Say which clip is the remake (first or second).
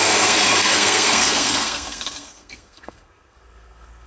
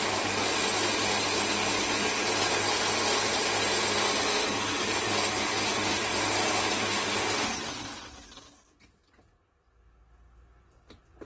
first